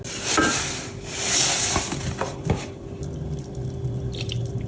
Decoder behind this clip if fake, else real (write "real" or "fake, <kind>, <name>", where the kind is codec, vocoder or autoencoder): real